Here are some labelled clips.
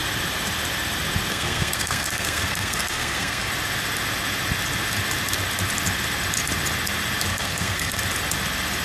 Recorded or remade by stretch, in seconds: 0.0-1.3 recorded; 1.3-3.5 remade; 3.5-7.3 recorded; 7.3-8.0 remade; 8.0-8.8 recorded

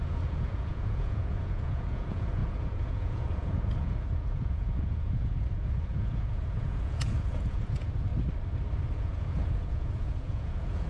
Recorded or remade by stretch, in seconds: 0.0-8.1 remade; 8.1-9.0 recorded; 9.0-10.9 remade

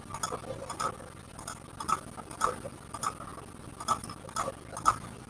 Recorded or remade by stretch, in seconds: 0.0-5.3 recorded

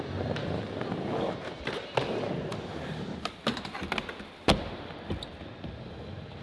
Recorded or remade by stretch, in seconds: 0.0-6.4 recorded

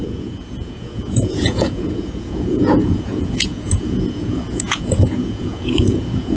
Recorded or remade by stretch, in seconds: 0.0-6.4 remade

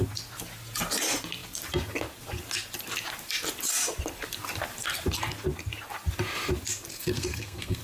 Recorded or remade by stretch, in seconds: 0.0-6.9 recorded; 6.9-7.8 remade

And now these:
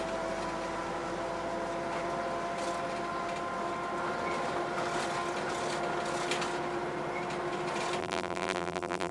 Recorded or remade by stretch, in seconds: 0.0-8.0 recorded; 8.0-9.1 remade